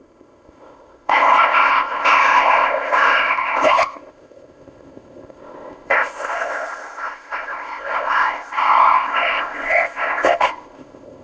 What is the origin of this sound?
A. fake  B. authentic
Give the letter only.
A